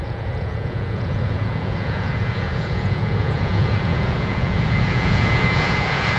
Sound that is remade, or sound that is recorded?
remade